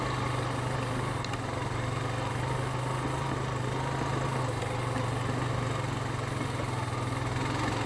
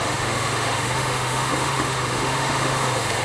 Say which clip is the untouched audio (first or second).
first